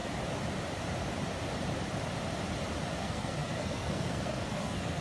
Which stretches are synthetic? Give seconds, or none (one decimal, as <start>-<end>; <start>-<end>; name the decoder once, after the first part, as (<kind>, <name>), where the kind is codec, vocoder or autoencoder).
3.0-5.0 (codec, SNAC)